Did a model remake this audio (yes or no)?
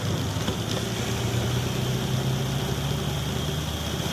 no